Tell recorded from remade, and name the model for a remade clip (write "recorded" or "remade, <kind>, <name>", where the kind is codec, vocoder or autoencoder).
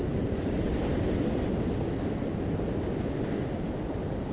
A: recorded